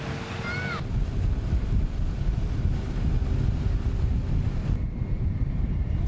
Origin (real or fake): real